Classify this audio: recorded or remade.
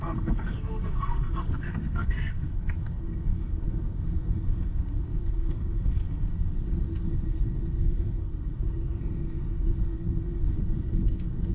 remade